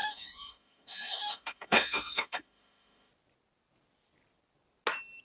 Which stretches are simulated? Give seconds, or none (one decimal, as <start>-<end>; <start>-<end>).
0.0-3.1